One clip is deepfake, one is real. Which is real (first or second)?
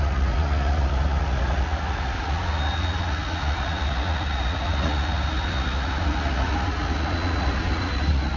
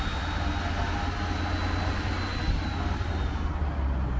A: second